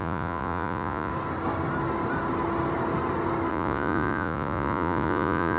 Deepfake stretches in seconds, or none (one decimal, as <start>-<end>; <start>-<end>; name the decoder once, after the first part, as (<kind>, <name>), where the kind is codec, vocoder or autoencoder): 0.0-1.1 (vocoder, Vocos); 3.5-5.6